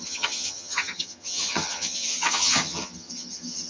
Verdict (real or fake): fake